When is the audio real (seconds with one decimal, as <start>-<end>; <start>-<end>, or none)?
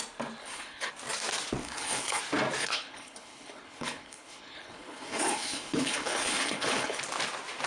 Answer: 0.0-0.4; 0.9-1.6; 2.2-2.6; 7.0-7.7